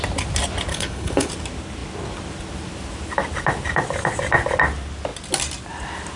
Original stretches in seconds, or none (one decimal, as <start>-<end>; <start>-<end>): 0.0-0.7; 1.3-6.2